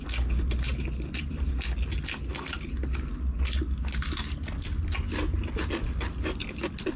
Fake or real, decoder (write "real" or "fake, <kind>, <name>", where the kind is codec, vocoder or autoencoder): real